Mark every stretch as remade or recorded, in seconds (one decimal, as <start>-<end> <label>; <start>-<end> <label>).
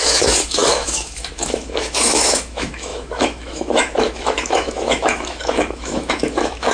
0.0-6.7 remade